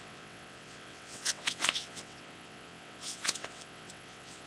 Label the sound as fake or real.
fake